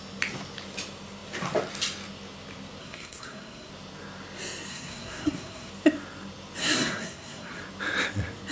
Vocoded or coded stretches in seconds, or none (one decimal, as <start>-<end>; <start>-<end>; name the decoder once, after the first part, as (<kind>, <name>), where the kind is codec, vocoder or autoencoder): 2.8-3.7 (codec, SNAC); 4.7-5.7; 6.6-7.6